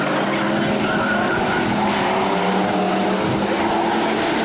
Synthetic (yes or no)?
no